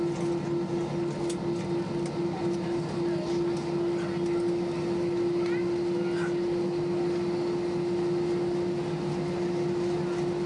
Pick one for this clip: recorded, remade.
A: recorded